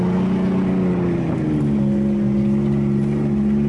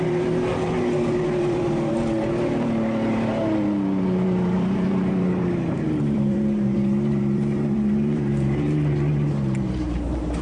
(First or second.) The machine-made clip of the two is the second